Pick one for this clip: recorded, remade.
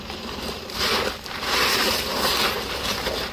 remade